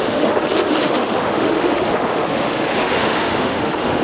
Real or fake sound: fake